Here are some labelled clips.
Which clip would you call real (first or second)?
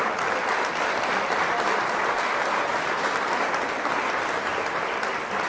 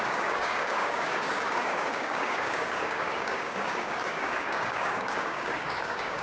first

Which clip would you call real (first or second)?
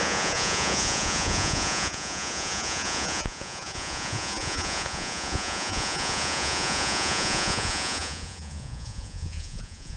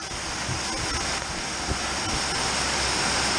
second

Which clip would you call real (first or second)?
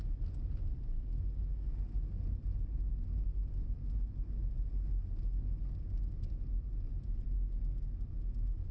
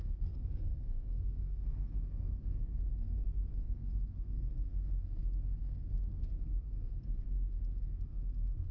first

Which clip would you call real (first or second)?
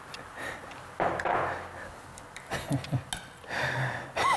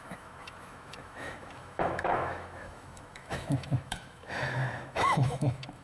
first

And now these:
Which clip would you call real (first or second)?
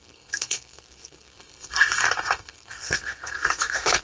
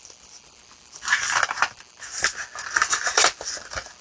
second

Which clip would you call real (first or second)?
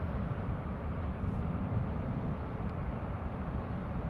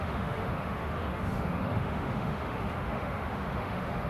first